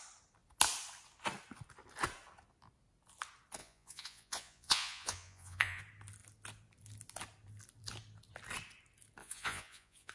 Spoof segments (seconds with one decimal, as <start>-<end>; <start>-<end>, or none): 3.6-5.8; 9.2-10.1